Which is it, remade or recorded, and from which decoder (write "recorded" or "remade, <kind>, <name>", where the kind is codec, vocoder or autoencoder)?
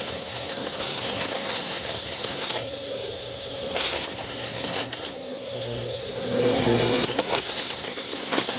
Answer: remade, codec, SNAC